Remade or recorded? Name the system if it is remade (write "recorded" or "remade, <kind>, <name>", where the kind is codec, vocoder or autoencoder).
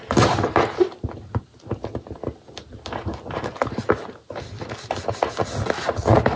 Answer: recorded